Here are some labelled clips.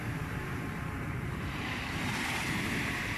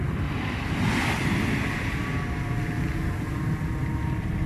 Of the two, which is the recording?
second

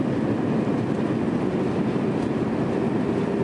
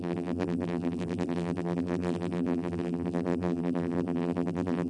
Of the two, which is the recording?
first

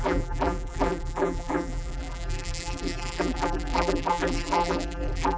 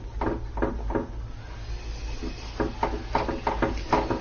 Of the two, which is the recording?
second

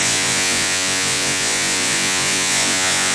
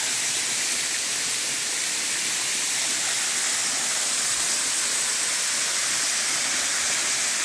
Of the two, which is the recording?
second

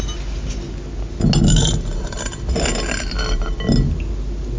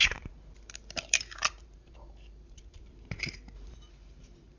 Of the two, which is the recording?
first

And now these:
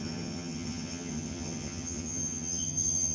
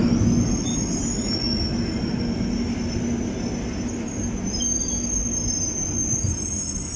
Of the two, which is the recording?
second